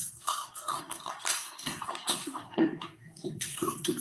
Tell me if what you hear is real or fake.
fake